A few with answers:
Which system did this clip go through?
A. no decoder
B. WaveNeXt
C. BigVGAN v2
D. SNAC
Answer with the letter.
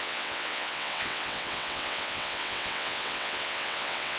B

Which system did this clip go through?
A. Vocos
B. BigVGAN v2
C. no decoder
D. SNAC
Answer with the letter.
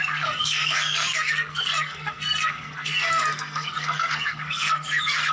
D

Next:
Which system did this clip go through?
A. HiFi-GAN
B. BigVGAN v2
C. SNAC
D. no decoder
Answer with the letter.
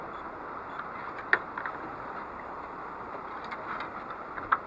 D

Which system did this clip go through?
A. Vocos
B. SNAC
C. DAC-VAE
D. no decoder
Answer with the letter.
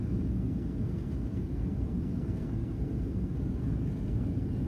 B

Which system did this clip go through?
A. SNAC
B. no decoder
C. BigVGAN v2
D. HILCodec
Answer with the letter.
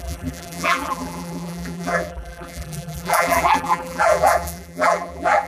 C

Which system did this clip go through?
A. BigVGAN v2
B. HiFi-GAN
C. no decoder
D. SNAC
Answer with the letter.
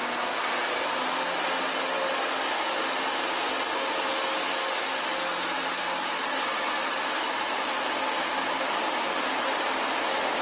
C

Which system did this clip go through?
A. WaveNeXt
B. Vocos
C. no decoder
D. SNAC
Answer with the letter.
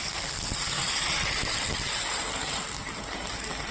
C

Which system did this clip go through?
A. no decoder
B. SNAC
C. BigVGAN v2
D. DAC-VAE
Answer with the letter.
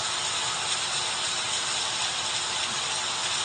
A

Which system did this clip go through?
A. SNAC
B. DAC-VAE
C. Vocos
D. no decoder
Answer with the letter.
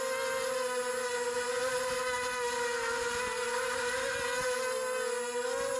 D